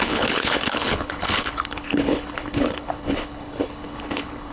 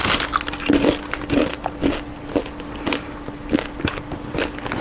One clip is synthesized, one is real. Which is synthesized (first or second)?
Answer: first